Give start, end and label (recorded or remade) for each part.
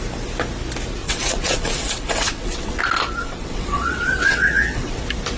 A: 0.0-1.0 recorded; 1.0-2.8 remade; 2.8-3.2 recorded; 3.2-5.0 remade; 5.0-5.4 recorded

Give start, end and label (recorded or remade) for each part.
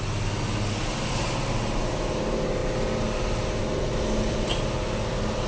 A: 0.0-5.5 recorded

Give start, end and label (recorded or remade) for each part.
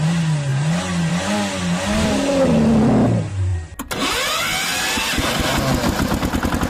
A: 0.0-6.7 recorded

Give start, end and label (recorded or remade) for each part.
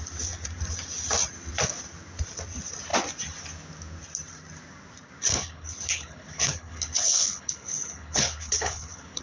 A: 0.0-5.3 recorded; 5.3-9.2 remade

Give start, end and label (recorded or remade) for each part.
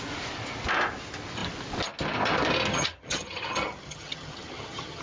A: 0.0-2.7 recorded; 2.7-5.0 remade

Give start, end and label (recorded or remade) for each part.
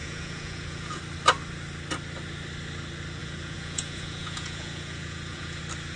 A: 0.0-1.0 remade; 1.0-3.2 recorded; 3.2-5.6 remade; 5.6-6.0 recorded